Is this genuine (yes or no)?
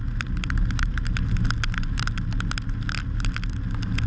yes